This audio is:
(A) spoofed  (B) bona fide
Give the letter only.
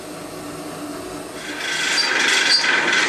B